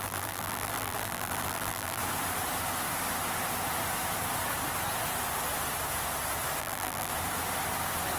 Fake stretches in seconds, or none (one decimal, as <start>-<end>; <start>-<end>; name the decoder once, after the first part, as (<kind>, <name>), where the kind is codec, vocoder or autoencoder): 0.0-2.0 (vocoder, BigVGAN v2); 6.6-7.1